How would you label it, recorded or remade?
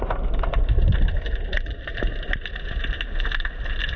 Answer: recorded